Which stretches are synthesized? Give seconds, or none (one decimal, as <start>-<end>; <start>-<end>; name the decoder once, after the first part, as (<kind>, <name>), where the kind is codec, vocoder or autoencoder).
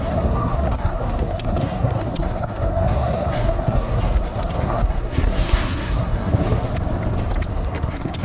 0.0-6.7 (codec, SNAC); 7.5-8.2